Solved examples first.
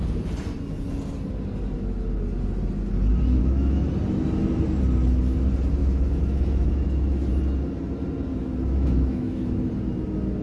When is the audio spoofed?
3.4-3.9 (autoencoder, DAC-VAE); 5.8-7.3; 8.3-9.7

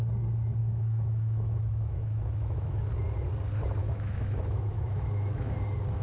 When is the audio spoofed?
0.6-2.8 (autoencoder, DAC-VAE); 3.8-5.5